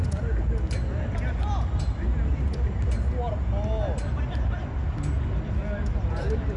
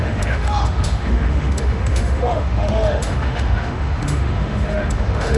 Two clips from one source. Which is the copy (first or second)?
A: second